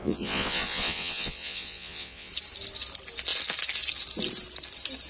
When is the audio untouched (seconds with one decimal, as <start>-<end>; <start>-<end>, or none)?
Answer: 2.3-5.1